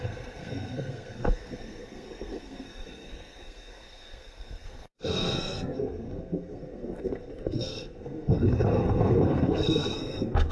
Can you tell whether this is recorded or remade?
remade